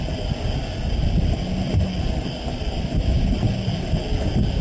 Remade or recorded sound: recorded